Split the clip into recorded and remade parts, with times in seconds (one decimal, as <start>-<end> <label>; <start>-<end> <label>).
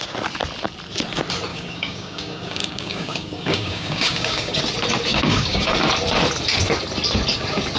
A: 0.0-1.5 recorded; 1.5-4.6 remade; 4.6-5.1 recorded; 5.1-5.7 remade; 5.7-7.8 recorded